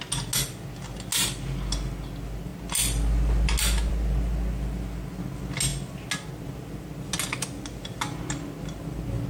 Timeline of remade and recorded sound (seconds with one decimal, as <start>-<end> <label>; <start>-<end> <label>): 0.0-9.3 recorded